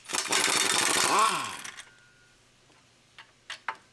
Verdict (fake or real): real